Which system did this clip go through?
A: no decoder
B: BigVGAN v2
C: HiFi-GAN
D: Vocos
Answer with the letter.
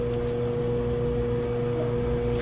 A